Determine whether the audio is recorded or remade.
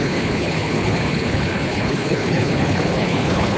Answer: remade